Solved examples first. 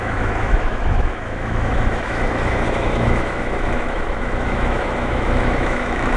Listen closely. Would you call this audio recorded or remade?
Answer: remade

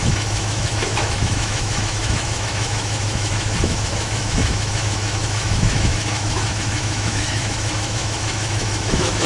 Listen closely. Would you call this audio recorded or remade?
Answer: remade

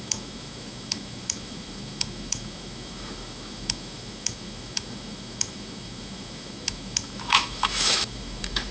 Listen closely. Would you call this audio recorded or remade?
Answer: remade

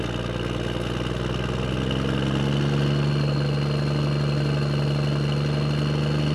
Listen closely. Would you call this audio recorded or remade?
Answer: recorded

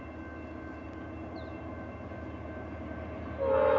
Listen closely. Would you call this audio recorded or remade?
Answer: recorded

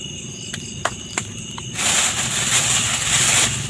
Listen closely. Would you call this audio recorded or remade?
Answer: recorded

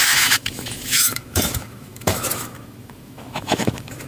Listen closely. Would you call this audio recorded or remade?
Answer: remade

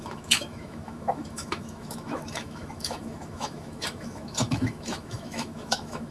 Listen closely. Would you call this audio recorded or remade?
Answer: remade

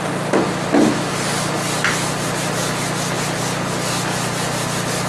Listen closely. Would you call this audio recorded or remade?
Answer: recorded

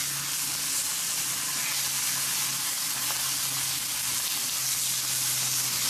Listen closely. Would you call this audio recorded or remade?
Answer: recorded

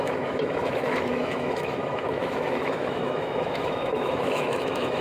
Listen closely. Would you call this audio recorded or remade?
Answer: remade